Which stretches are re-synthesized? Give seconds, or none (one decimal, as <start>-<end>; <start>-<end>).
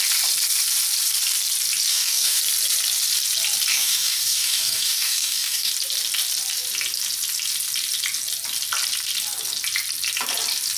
1.9-2.4; 3.7-5.7